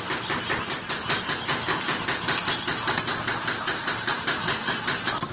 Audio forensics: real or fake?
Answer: real